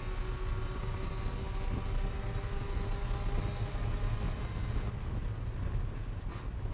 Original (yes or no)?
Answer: yes